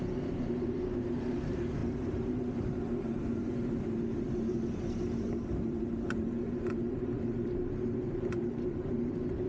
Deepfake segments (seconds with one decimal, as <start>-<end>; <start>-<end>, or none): 0.0-9.5